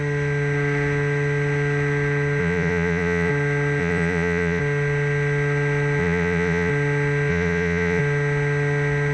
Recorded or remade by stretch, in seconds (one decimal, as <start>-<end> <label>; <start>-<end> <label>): 0.0-2.4 recorded; 2.4-3.3 remade; 3.3-3.8 recorded; 3.8-4.6 remade; 4.6-6.0 recorded; 6.0-6.7 remade; 6.7-7.3 recorded; 7.3-8.0 remade; 8.0-9.1 recorded